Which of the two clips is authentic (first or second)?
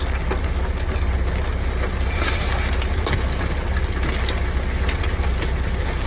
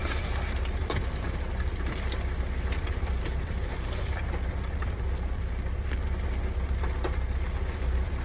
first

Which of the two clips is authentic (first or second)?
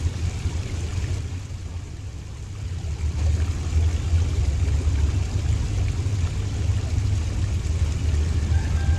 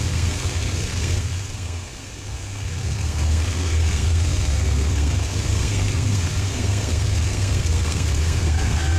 first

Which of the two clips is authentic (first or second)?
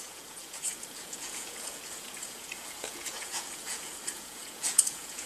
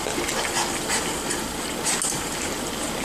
second